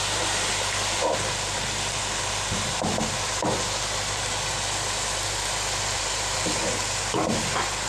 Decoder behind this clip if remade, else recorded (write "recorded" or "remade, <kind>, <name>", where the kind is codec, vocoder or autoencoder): recorded